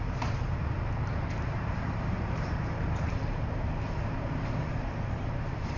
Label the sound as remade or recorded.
remade